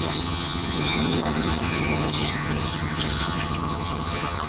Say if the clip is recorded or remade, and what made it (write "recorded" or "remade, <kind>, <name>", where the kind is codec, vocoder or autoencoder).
remade, vocoder, HiFi-GAN